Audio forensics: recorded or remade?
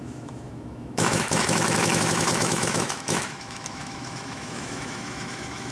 remade